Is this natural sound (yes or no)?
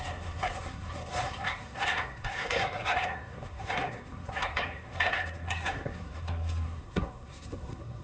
no